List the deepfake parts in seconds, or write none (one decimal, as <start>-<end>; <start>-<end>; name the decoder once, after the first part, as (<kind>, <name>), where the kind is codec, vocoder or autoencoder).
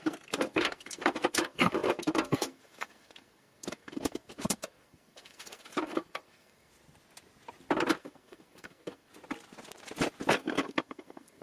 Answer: 0.0-6.7 (codec, SNAC); 7.9-9.1; 10.3-11.4